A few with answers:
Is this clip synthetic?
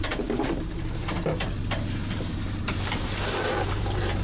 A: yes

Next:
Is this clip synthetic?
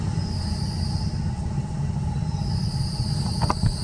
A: no